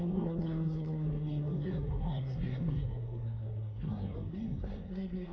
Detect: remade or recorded remade